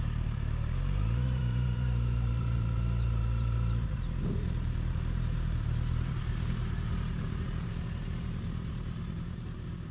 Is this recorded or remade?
remade